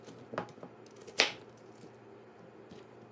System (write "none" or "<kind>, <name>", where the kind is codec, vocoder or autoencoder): none